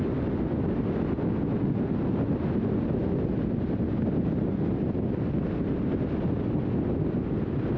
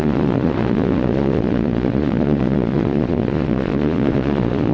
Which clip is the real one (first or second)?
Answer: first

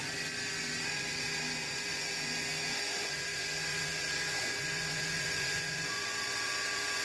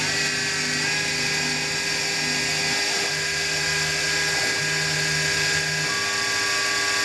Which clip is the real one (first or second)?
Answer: second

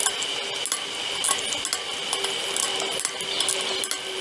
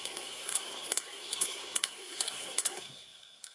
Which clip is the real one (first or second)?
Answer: first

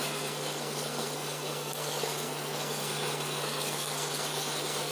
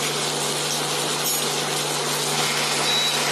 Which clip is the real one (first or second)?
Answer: second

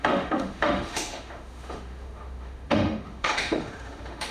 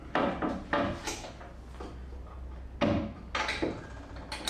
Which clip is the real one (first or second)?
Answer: second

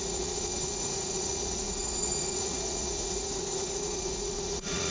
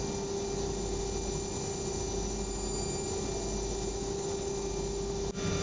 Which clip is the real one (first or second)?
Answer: second